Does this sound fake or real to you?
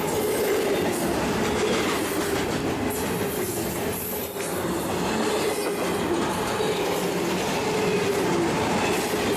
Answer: real